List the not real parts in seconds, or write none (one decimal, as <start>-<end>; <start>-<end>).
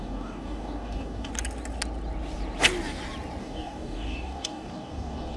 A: 0.0-1.3; 3.4-5.4